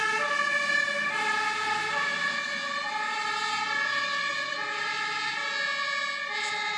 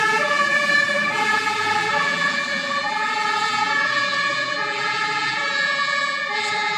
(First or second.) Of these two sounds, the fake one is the second